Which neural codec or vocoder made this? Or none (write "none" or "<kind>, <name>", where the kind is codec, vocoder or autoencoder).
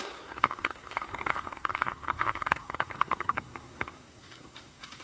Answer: codec, SNAC